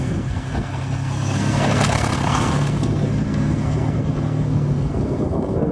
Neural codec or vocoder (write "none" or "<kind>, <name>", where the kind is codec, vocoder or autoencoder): codec, SNAC